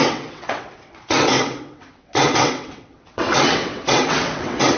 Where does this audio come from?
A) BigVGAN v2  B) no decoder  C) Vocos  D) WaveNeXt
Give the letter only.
D